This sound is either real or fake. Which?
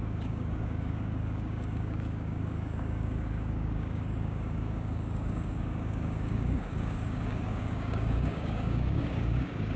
fake